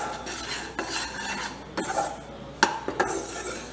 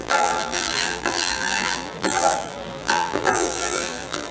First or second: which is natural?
first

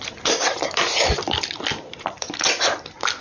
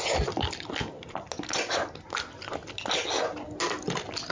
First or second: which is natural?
second